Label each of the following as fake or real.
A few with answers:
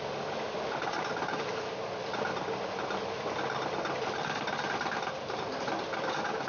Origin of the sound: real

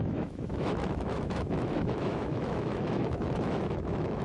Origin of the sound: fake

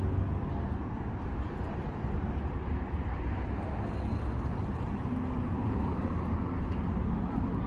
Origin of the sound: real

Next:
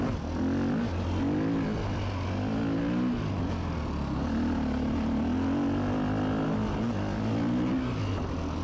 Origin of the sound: real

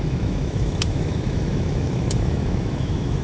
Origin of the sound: fake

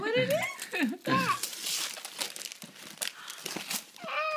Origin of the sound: real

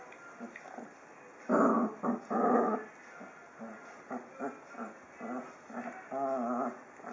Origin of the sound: real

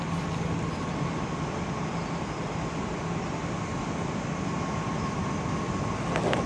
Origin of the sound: real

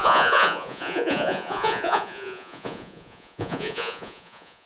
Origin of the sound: fake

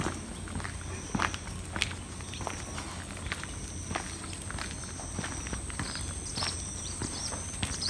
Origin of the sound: real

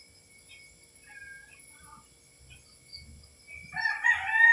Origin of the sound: real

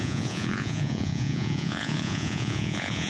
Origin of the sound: fake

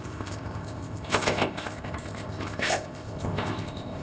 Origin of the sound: fake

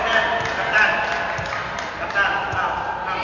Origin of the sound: real